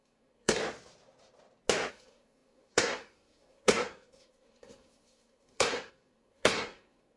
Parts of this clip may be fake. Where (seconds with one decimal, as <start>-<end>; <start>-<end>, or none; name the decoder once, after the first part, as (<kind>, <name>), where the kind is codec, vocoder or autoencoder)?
0.0-0.6 (codec, SNAC); 1.9-7.2